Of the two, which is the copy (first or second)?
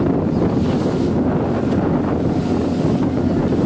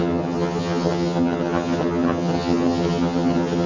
second